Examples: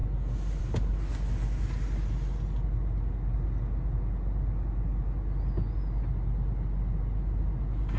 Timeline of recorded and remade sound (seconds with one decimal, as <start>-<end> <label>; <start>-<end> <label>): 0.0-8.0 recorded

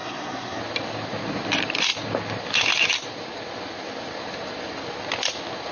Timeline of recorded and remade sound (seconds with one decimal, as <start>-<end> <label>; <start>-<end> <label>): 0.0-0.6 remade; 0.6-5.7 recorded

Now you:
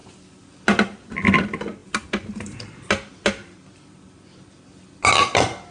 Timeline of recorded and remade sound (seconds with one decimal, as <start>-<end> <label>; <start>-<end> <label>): 0.0-5.7 recorded

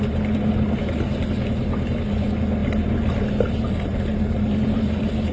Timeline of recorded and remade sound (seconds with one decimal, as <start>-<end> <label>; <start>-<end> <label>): 0.0-5.3 recorded